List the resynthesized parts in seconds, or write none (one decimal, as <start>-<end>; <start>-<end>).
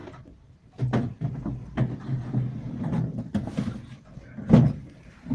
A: 0.0-0.7